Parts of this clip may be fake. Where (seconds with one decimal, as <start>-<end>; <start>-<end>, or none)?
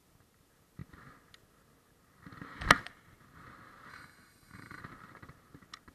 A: 3.9-4.8